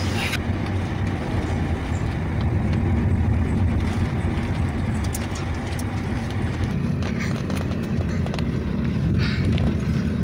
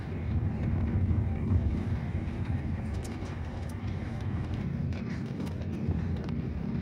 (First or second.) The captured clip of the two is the first